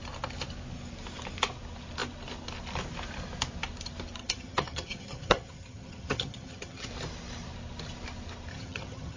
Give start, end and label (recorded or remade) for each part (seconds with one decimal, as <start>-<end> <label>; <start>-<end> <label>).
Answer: 0.0-4.2 recorded; 4.2-6.9 remade; 6.9-8.5 recorded; 8.5-9.2 remade

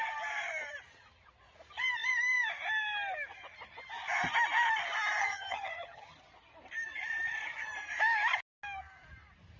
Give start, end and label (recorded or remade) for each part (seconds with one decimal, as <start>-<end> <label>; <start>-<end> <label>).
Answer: 0.0-5.2 recorded; 5.2-6.2 remade; 6.2-9.6 recorded

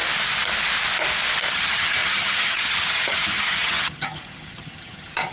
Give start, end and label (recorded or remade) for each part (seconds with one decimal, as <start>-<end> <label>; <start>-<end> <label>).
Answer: 0.0-1.5 recorded; 1.5-5.3 remade

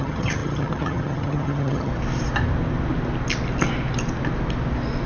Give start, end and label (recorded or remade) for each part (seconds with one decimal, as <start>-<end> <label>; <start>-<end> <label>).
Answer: 0.0-1.9 remade; 1.9-5.1 recorded

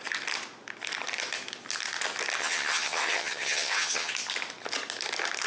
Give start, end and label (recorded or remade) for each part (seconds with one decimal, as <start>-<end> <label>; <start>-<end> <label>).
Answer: 0.0-2.4 recorded; 2.4-4.1 remade; 4.1-5.5 recorded

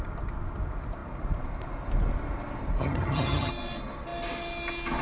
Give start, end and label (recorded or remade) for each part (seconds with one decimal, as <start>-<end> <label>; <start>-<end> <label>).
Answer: 0.0-2.8 recorded; 2.8-3.5 remade; 3.5-5.0 recorded

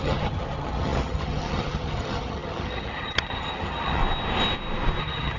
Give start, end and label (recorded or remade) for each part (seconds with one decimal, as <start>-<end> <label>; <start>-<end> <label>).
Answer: 0.0-4.0 remade; 4.0-5.0 recorded; 5.0-5.4 remade

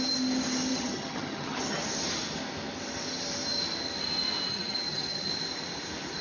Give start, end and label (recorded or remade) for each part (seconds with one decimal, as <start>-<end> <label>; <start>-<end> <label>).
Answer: 0.0-0.7 recorded; 0.7-1.8 remade; 1.8-4.5 recorded; 4.5-5.3 remade; 5.3-6.2 recorded